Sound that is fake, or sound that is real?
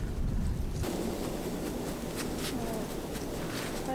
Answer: real